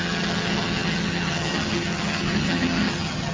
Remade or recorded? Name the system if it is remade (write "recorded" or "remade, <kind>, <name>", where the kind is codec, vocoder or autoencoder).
remade, vocoder, HiFi-GAN